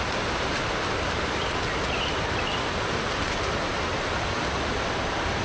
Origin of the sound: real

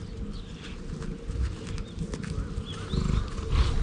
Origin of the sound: real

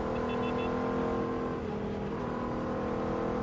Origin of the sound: real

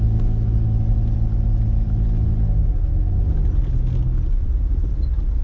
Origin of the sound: real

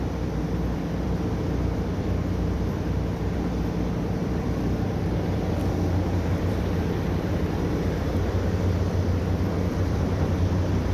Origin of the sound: fake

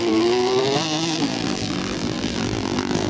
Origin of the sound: fake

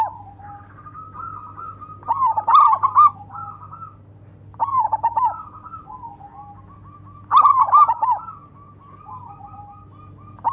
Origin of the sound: real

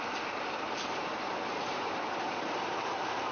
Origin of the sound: fake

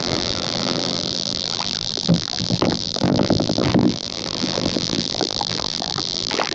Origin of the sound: fake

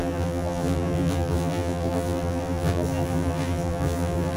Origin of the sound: fake